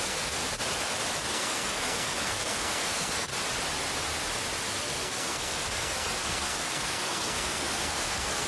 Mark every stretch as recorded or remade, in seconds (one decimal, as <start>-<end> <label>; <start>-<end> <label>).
0.0-0.4 remade; 0.4-1.2 recorded; 1.2-3.3 remade; 3.3-4.8 recorded; 4.8-8.5 remade